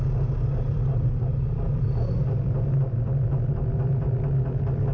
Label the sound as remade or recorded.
recorded